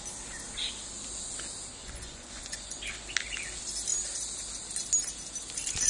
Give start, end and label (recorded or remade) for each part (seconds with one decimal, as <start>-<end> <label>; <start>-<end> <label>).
0.0-1.8 recorded; 1.8-2.8 remade; 2.8-5.9 recorded